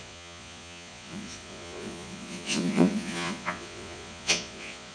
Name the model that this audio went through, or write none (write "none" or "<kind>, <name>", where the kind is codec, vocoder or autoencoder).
vocoder, Vocos